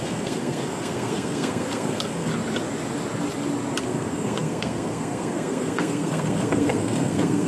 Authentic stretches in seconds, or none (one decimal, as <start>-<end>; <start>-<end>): 2.3-3.8